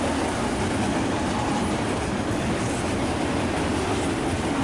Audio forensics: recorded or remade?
recorded